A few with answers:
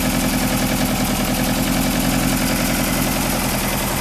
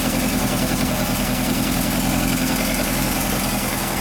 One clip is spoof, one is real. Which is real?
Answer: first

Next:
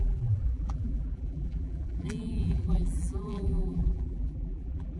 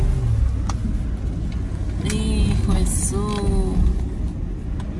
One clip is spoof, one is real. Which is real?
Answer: second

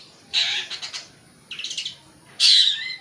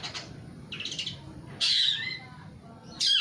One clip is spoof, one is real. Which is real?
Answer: first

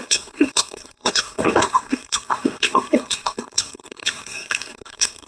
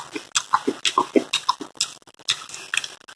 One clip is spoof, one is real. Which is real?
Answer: second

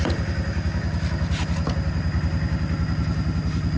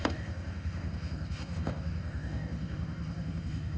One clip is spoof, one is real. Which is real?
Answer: first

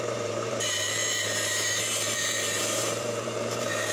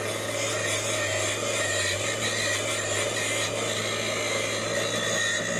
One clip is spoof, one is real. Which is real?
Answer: second